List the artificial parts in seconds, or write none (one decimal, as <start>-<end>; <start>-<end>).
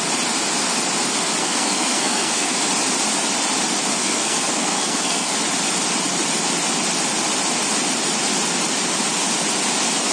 1.4-2.6; 4.0-5.3